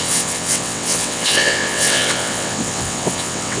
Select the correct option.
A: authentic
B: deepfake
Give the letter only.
B